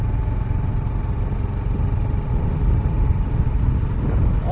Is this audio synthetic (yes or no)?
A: no